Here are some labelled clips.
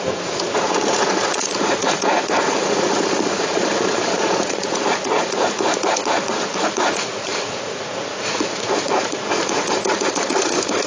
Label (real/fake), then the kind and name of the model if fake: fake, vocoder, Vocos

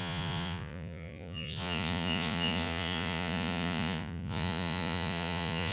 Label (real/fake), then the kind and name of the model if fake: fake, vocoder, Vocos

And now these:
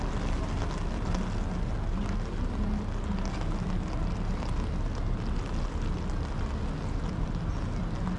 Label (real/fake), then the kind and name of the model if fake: real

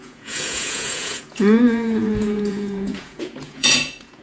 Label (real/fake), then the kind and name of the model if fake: fake, vocoder, Vocos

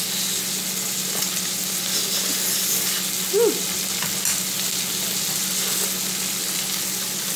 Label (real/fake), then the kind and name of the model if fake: real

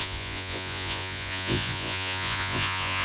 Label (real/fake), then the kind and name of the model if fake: fake, vocoder, Vocos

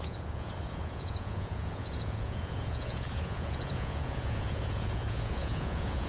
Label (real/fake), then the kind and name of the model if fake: fake, vocoder, Vocos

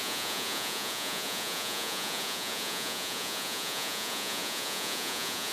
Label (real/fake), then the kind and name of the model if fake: fake, vocoder, Vocos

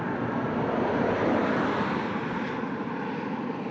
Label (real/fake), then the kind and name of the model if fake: real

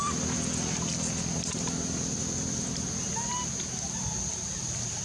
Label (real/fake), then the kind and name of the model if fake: real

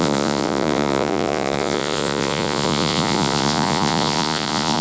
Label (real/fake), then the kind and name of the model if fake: fake, vocoder, Vocos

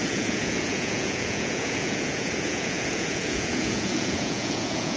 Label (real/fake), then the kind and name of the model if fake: fake, vocoder, Vocos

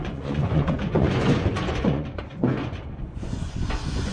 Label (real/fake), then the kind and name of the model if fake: fake, vocoder, Vocos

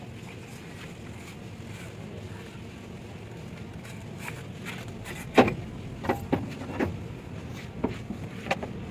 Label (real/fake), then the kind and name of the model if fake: real